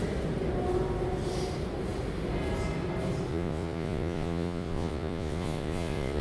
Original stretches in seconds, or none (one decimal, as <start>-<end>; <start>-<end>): 0.0-3.3